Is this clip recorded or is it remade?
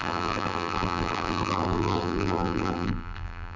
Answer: remade